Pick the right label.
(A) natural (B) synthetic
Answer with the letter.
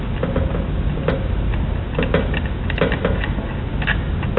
A